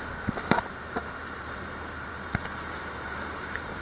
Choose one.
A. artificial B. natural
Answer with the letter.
A